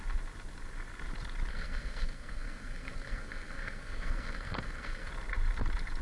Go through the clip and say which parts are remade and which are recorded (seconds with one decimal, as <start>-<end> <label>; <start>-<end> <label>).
0.0-1.5 recorded; 1.5-5.1 remade; 5.1-6.0 recorded